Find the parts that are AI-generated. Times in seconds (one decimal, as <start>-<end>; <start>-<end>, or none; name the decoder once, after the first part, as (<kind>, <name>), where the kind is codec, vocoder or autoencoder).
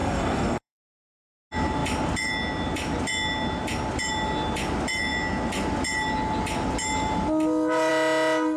0.0-1.2 (codec, DAC)